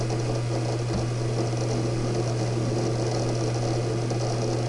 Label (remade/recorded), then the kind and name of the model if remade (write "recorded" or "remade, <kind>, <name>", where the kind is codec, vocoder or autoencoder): recorded